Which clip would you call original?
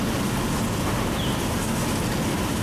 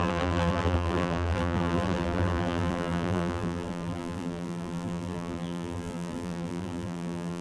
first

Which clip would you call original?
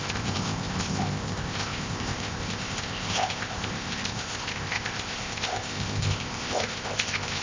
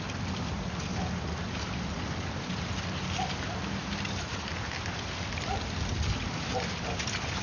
second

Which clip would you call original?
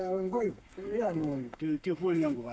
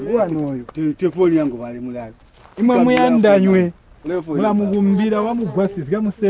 second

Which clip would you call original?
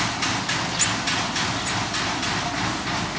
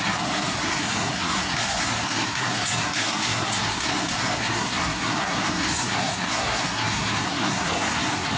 first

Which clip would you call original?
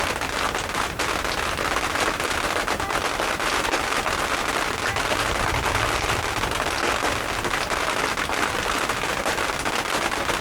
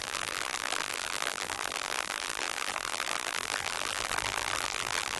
first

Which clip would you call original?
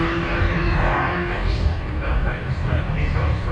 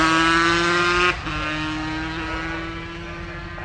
second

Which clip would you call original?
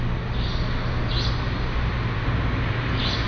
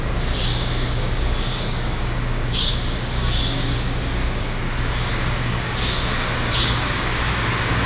first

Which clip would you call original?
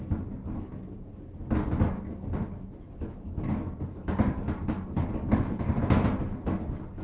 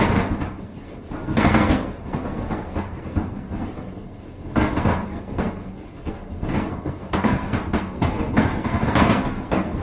first